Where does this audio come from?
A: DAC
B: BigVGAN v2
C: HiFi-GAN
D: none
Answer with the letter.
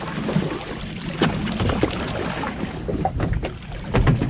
D